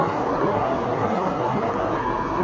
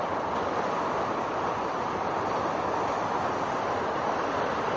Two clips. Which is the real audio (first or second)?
second